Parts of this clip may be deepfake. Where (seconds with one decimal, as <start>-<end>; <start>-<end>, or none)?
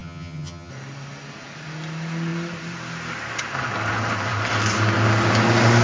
0.0-0.7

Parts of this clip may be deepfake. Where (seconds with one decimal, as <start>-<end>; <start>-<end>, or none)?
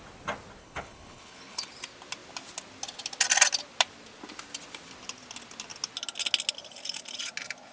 0.6-1.7